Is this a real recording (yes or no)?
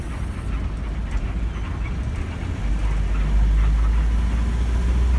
yes